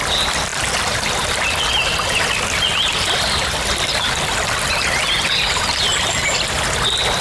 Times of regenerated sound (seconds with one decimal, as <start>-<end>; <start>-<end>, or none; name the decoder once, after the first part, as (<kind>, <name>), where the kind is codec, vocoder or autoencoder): none